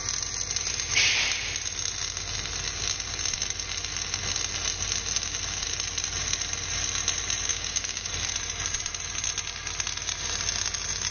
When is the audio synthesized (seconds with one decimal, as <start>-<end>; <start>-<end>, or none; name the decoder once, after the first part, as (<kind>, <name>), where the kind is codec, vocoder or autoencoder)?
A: 7.5-8.1 (codec, DAC)